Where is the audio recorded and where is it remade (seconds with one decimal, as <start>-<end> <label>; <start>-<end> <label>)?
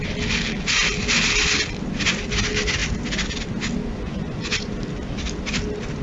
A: 0.0-3.8 recorded; 3.8-4.7 remade; 4.7-6.0 recorded